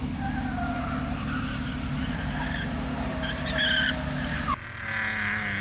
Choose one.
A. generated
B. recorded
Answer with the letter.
B